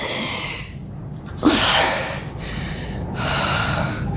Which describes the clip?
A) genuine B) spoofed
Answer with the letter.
A